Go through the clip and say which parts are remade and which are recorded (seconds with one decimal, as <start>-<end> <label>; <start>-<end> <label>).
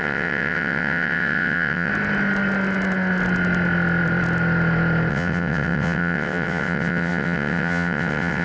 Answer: 0.0-1.9 remade; 1.9-5.1 recorded; 5.1-8.4 remade